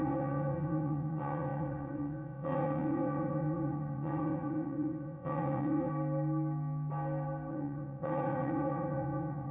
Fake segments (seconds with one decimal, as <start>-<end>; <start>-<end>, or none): 0.0-5.9; 7.5-9.5